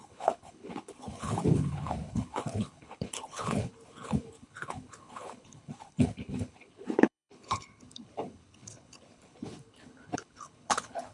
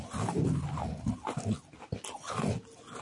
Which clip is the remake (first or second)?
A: first